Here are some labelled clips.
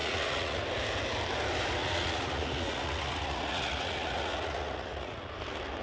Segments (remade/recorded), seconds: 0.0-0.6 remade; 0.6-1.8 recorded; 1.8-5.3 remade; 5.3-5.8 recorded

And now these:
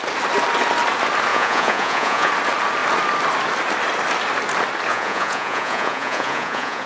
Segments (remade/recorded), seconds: 0.0-1.3 recorded; 1.3-2.3 remade; 2.3-4.9 recorded; 4.9-6.9 remade

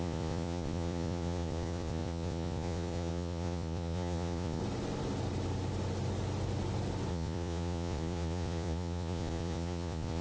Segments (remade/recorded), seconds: 0.0-4.6 remade; 4.6-7.1 recorded; 7.1-10.2 remade

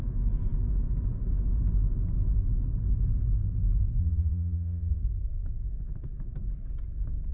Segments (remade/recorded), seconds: 0.0-4.0 recorded; 4.0-5.0 remade; 5.0-7.3 recorded